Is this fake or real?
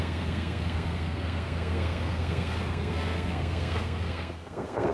fake